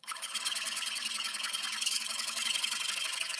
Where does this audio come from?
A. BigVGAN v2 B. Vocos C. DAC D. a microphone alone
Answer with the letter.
C